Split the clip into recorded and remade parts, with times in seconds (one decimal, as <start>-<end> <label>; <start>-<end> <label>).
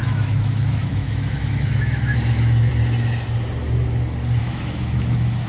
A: 0.0-2.7 remade; 2.7-4.4 recorded; 4.4-5.5 remade